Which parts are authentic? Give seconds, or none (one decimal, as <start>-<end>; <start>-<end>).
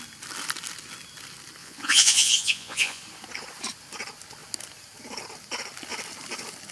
0.0-1.6; 3.0-6.7